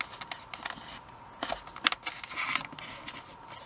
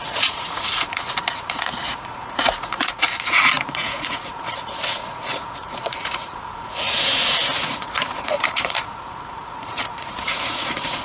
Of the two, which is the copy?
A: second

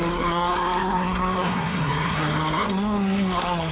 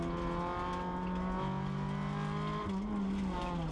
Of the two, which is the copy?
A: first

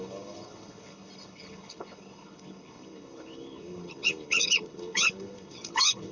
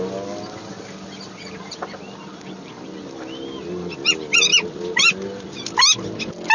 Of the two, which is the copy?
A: first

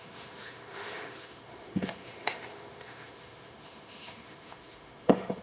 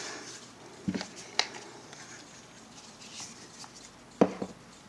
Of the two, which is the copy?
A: first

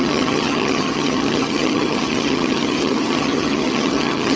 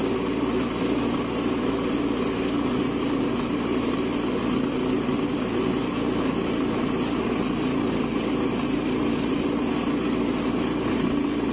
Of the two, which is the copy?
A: first